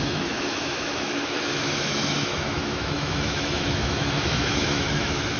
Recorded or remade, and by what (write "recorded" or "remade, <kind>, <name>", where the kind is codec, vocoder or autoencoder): remade, autoencoder, DAC-VAE